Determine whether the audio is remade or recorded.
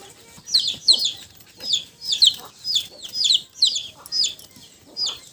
remade